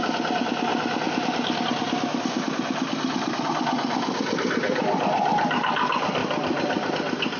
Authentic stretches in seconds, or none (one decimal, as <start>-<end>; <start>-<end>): 0.0-7.4

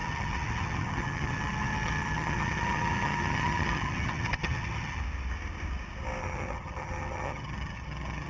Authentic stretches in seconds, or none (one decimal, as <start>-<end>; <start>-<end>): 5.0-6.2

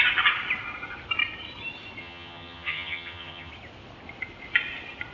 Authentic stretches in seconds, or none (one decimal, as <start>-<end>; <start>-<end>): 0.0-2.0; 3.5-5.1

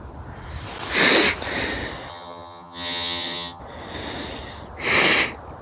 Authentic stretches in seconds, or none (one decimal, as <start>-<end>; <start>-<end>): 0.0-2.1; 3.6-5.6

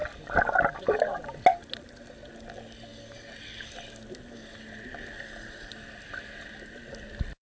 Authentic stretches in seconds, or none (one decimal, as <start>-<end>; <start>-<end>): 0.0-7.5

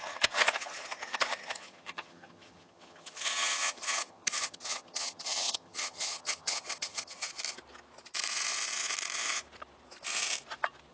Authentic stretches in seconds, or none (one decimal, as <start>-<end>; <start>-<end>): 7.3-10.9

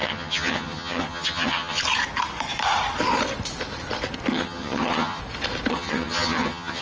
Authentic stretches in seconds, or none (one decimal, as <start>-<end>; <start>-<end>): 1.8-4.3; 5.2-5.7

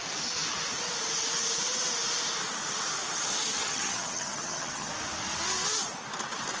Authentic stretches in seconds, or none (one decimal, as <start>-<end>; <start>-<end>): 0.0-3.5; 4.9-6.6